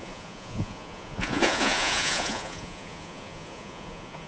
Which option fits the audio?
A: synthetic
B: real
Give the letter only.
A